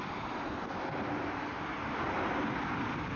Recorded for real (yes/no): yes